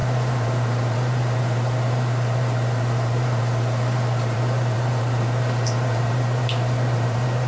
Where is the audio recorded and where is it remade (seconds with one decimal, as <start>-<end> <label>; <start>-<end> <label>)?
0.0-7.5 remade